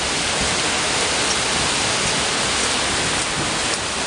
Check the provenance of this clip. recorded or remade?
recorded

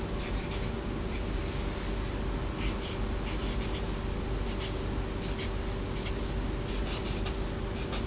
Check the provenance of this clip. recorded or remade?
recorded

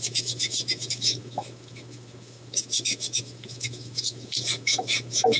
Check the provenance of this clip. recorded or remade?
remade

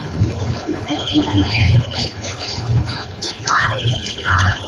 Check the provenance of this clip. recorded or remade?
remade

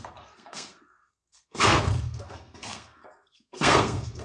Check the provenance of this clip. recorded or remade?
remade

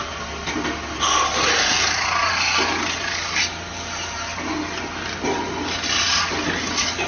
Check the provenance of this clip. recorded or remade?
recorded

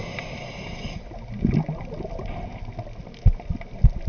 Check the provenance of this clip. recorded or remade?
recorded